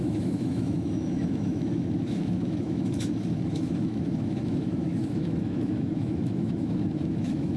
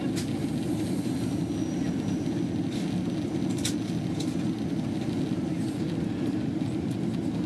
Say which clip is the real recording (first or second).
second